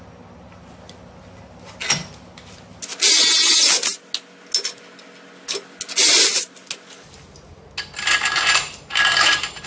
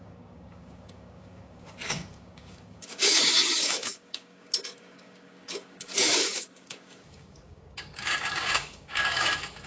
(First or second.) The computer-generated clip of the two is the second